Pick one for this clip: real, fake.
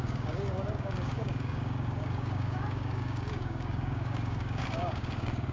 fake